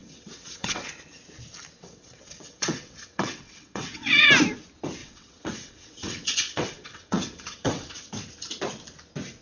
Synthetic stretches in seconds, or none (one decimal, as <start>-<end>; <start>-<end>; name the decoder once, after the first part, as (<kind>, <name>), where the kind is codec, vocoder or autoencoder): 0.0-0.9 (vocoder, WaveNeXt); 1.8-4.3; 5.0-8.1